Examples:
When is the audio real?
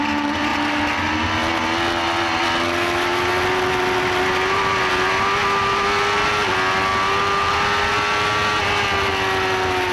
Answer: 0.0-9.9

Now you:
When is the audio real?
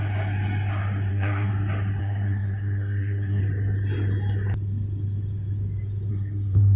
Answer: 0.0-1.1; 1.5-2.0; 3.4-6.1